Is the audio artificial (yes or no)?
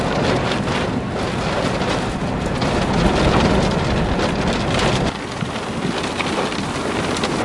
no